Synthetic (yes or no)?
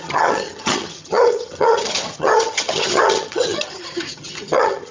yes